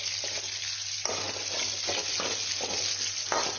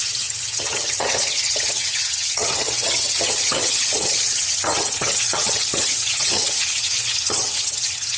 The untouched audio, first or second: first